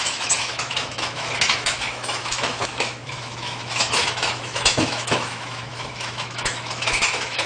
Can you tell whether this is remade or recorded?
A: remade